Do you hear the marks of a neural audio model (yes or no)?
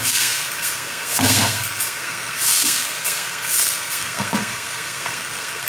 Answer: yes